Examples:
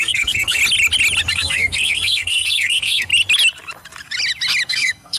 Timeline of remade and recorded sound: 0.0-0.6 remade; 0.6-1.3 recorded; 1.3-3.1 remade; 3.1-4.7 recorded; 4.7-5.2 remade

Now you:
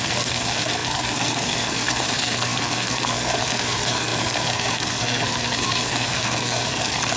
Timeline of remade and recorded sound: 0.0-7.2 remade

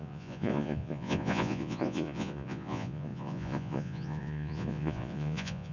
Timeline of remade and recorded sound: 0.0-5.7 remade